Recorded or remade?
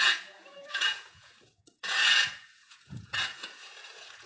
remade